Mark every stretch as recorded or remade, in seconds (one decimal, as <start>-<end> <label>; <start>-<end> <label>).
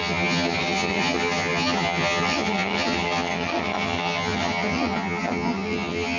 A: 0.0-6.2 remade